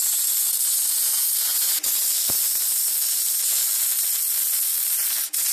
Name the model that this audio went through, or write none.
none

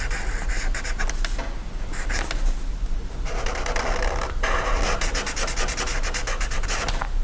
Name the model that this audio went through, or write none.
none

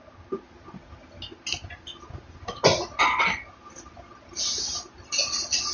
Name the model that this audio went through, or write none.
none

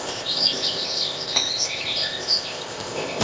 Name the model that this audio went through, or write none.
codec, ZipCodec